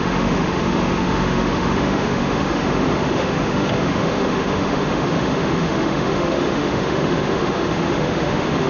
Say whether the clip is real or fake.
fake